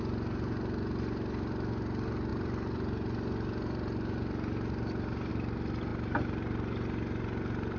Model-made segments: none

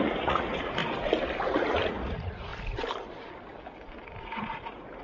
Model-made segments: 0.0-0.8 (vocoder, Vocos); 1.4-2.5; 4.2-5.0

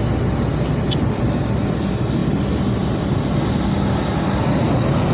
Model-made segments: none

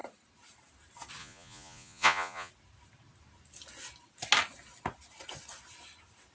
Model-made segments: 1.2-2.5 (vocoder, Vocos)